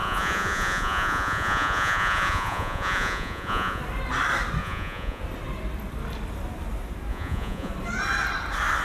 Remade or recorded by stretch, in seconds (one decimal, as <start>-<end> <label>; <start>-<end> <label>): 0.0-3.8 remade; 3.8-4.6 recorded; 4.6-5.2 remade; 5.2-7.1 recorded; 7.1-7.7 remade; 7.7-8.8 recorded